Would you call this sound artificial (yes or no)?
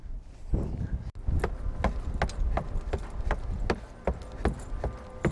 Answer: no